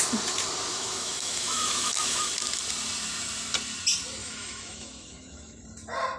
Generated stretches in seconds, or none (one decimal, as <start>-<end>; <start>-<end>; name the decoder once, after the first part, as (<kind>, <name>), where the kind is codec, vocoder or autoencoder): 0.7-2.3 (autoencoder, DAC-VAE); 4.2-5.6